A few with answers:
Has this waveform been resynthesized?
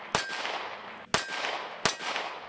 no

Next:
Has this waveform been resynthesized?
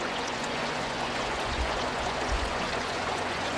yes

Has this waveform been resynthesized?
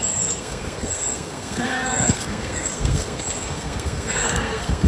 yes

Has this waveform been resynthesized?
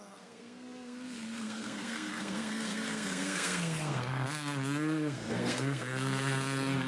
yes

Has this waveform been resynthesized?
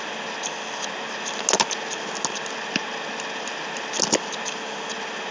no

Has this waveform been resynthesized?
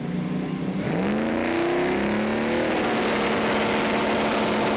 no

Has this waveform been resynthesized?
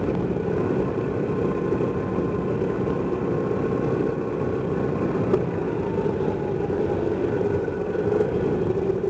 no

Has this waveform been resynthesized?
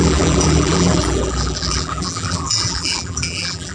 yes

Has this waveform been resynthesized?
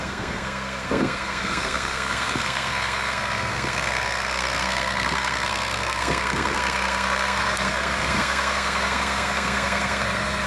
yes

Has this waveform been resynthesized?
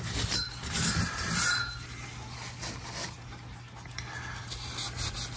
no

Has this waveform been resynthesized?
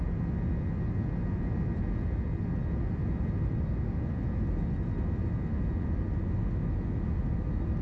no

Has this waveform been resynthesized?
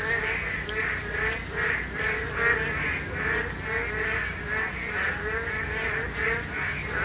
no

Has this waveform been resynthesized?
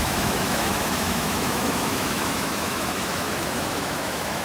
yes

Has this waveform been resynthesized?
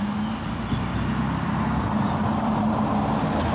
no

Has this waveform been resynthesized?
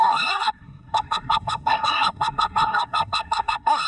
yes